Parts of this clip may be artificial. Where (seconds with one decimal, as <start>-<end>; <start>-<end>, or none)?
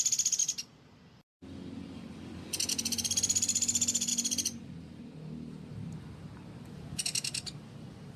none